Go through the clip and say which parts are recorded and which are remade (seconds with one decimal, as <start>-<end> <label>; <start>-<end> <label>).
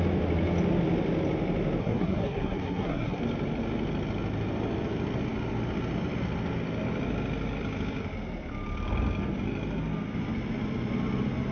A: 0.0-1.8 recorded; 1.8-3.2 remade; 3.2-11.5 recorded